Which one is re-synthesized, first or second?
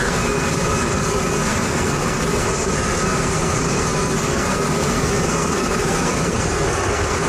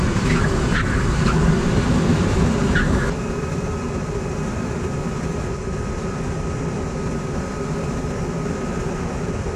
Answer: first